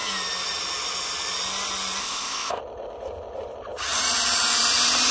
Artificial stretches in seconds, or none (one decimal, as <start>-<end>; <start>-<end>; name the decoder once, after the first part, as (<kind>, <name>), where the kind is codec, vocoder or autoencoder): 2.0-2.6 (codec, ZipCodec)

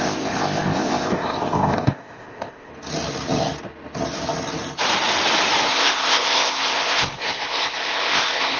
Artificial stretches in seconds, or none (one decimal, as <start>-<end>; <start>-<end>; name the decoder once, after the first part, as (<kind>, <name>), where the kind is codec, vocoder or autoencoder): 0.0-2.7 (codec, ZipCodec); 5.7-8.6

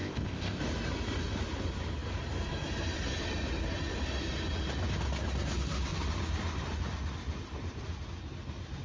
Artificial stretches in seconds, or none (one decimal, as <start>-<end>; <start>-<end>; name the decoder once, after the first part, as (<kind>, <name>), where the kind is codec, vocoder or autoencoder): 0.0-0.6 (codec, ZipCodec)

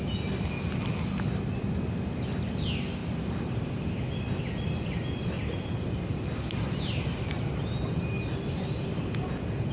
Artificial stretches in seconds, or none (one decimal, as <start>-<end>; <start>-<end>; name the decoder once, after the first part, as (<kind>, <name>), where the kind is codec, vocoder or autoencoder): none

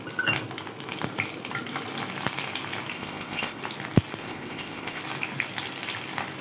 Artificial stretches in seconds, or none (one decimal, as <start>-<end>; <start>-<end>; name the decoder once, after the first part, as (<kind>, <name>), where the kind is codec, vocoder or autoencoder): 2.9-3.6 (codec, ZipCodec); 4.2-5.0

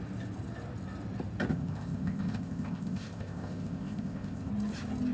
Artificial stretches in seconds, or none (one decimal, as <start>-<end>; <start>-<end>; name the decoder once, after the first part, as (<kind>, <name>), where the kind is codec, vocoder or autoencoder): 1.5-4.5 (codec, ZipCodec)